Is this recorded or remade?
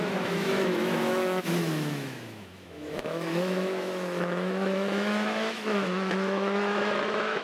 remade